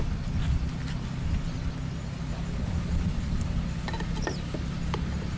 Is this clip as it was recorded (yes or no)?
yes